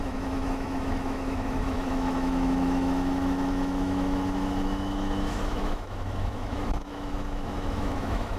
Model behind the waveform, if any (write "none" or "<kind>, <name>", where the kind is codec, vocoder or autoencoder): autoencoder, DAC-VAE